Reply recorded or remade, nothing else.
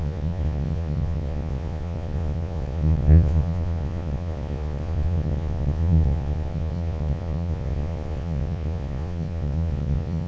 remade